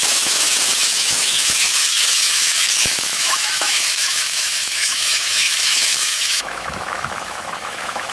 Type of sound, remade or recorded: remade